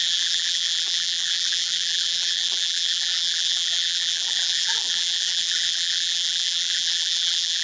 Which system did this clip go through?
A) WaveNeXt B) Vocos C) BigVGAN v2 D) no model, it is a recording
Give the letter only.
C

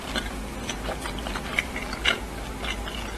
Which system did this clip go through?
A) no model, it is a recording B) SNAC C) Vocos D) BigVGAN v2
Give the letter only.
A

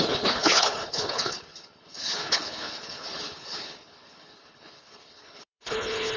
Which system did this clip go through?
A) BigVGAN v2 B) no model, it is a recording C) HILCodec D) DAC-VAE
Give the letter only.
C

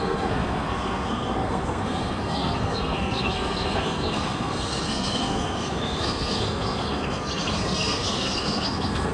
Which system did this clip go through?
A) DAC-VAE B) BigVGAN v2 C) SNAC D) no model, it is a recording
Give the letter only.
C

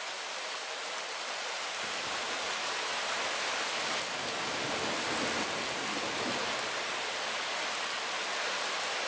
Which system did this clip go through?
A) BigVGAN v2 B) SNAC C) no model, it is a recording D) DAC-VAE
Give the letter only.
A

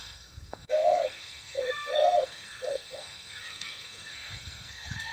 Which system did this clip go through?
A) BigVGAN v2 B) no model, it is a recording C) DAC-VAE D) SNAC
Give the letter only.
D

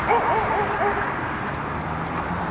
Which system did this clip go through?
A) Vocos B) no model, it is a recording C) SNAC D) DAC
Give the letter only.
B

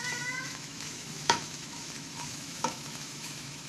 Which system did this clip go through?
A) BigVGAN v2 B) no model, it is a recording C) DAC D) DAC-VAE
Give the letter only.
D